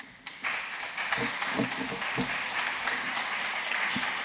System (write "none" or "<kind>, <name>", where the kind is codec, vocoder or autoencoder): none